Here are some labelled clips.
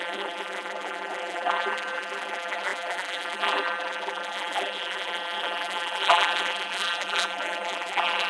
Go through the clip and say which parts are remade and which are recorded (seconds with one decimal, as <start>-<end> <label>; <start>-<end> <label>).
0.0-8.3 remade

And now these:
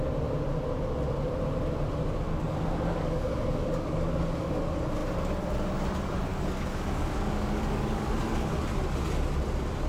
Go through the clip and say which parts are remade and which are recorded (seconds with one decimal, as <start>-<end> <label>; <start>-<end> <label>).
0.0-2.3 recorded; 2.3-4.6 remade; 4.6-6.3 recorded; 6.3-8.1 remade; 8.1-9.9 recorded

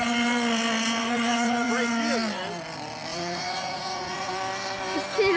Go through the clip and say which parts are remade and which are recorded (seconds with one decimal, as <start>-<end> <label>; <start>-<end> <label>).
0.0-1.0 recorded; 1.0-1.7 remade; 1.7-3.1 recorded; 3.1-4.3 remade; 4.3-5.4 recorded